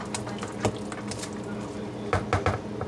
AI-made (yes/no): no